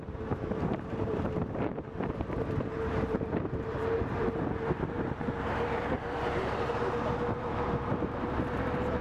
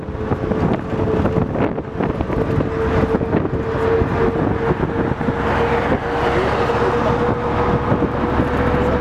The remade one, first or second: first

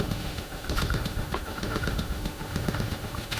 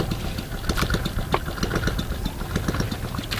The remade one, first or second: first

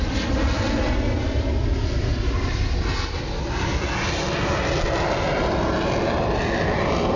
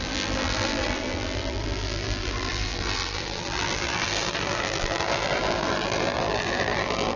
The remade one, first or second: second